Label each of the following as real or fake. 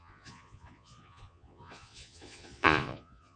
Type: fake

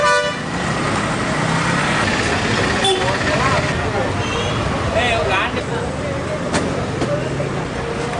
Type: real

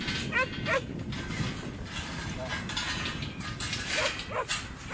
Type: real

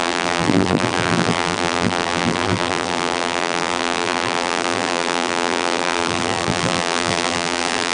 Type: fake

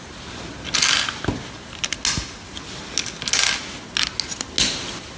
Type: real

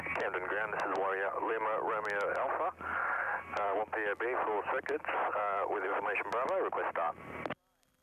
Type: real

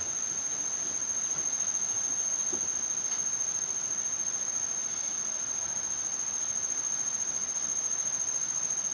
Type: real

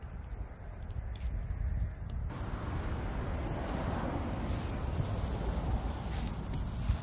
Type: real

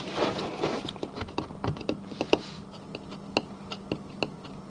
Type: real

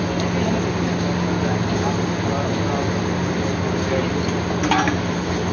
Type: real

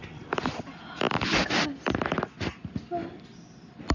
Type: real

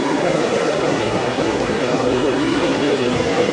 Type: fake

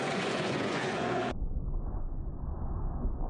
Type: fake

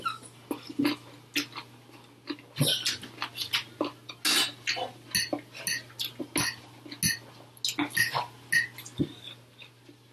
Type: real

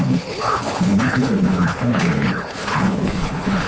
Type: fake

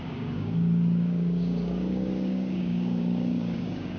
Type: fake